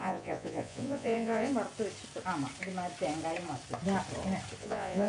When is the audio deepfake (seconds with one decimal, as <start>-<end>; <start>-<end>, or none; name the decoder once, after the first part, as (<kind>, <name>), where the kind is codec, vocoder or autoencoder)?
0.0-1.5 (vocoder, Vocos); 4.6-5.1